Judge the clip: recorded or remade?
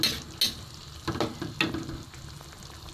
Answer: recorded